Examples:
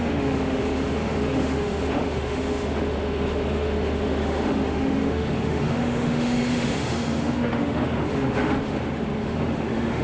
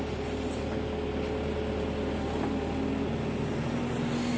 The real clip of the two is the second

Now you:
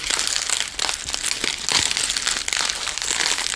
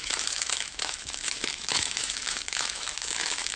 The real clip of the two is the first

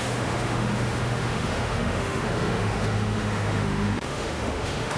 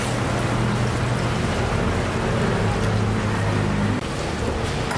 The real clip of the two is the second